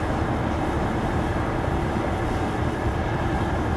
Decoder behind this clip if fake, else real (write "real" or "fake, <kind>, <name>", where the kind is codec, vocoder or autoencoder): real